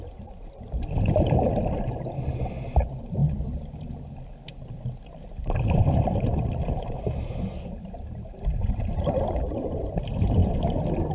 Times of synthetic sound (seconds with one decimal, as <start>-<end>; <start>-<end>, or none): 0.0-3.2; 5.7-10.4